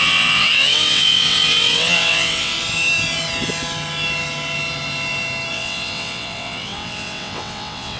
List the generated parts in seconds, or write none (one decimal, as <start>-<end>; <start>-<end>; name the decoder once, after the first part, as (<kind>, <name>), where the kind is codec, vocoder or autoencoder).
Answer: 0.0-2.5 (vocoder, WaveNeXt); 5.5-8.0